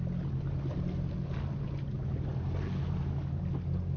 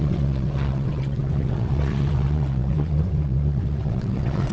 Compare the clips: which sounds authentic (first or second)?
first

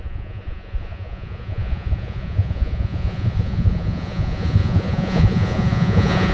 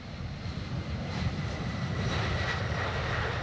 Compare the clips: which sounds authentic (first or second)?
second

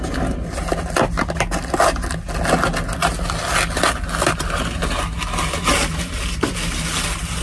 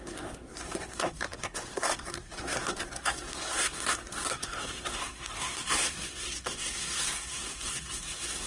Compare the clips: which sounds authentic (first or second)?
first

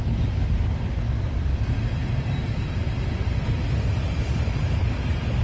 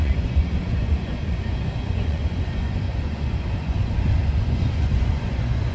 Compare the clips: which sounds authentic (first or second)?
first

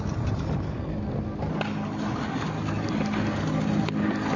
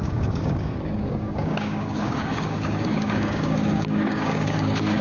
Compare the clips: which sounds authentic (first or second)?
first